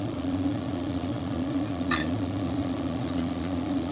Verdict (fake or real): fake